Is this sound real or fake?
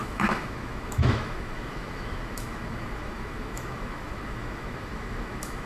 fake